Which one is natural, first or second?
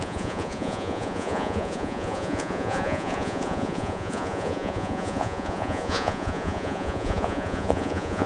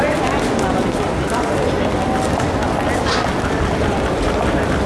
second